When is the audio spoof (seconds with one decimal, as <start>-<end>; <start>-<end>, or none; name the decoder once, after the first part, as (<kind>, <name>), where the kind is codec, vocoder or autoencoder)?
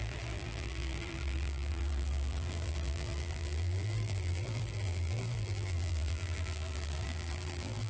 0.0-7.9 (vocoder, BigVGAN v2)